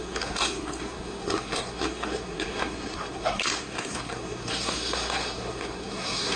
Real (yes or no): no